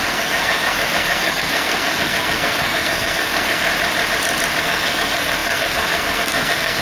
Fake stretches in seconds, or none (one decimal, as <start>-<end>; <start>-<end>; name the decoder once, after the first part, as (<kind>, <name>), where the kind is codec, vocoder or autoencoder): 0.0-3.7 (codec, SNAC); 4.6-6.8